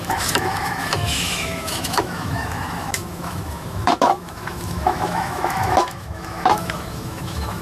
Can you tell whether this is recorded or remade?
remade